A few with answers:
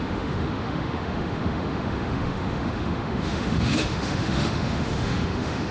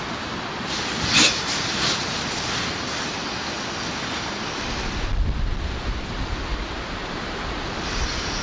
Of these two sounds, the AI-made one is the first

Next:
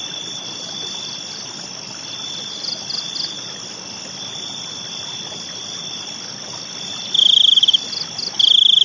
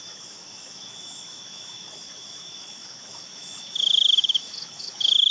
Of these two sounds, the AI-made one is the second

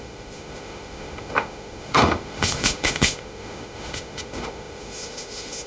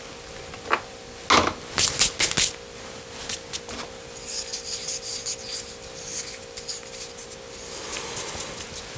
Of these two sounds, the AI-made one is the first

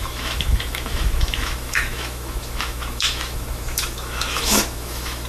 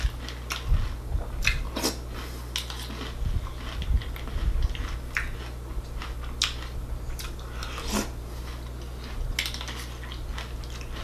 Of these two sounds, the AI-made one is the first